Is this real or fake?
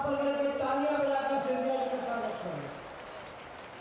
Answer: real